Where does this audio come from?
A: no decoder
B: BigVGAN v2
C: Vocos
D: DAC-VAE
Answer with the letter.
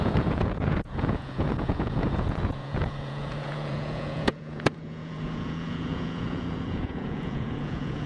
C